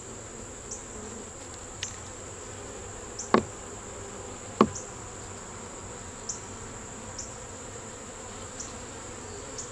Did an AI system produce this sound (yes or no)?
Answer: no